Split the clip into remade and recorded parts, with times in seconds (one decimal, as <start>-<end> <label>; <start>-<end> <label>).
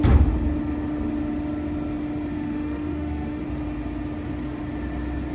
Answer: 0.0-2.3 recorded; 2.3-3.4 remade; 3.4-5.3 recorded